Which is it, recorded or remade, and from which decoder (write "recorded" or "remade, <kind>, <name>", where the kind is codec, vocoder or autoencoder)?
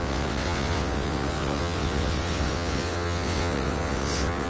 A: remade, vocoder, WaveNeXt